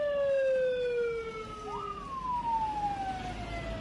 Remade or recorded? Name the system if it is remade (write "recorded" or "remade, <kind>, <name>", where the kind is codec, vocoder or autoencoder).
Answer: recorded